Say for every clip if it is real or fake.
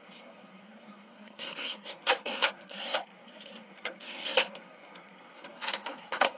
fake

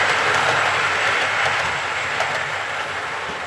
real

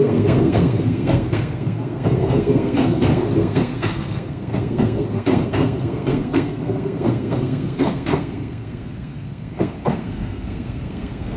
fake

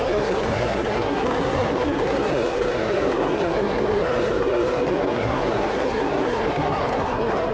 fake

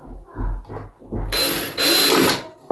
real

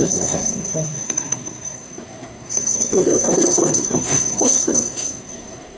fake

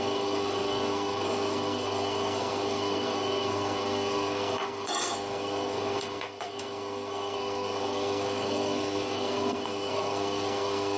fake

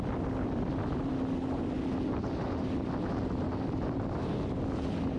real